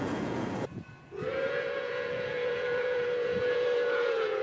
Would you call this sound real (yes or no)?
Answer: no